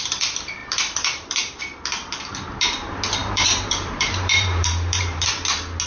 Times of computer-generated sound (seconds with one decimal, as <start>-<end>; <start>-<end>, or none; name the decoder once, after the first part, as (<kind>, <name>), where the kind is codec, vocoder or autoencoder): 0.6-1.6 (vocoder, BigVGAN v2); 3.2-5.3